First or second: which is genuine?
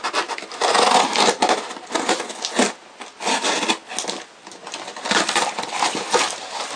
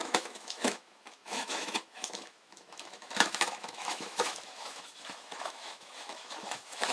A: first